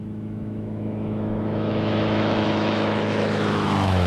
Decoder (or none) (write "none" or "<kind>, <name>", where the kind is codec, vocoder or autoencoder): autoencoder, DAC-VAE